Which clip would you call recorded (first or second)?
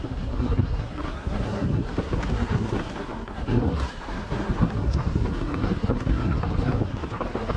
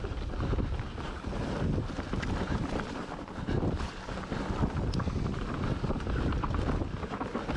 second